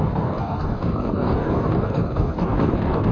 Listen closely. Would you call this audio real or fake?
fake